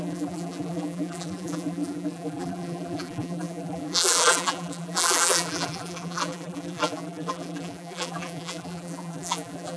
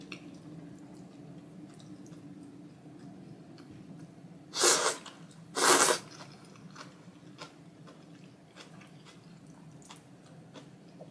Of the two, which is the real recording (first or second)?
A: second